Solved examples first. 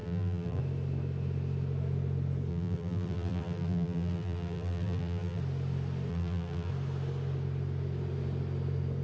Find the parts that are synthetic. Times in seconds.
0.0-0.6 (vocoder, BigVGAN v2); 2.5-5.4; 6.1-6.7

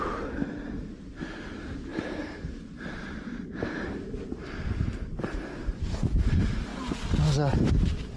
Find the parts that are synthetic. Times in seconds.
0.0-0.4 (vocoder, BigVGAN v2); 1.2-6.7; 7.5-8.2